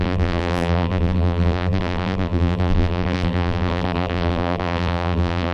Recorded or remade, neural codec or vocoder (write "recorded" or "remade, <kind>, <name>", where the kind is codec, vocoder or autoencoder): remade, vocoder, BigVGAN v2